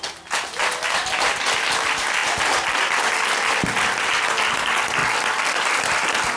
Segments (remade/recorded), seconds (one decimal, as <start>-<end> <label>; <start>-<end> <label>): 0.0-2.2 recorded; 2.2-2.8 remade; 2.8-5.0 recorded; 5.0-6.4 remade